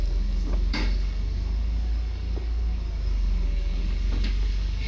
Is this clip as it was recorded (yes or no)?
no